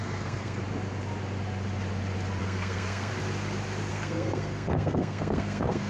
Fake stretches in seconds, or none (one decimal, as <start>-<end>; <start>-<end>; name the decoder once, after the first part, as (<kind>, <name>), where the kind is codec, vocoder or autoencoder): 0.0-0.6 (codec, SNAC); 2.4-3.1; 3.9-5.9